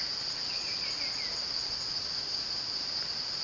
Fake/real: real